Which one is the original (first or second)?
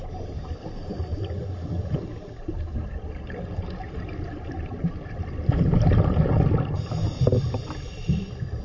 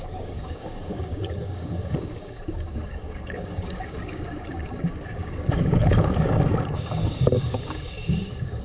first